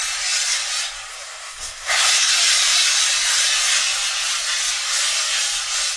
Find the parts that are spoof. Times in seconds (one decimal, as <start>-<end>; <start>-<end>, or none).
1.1-2.3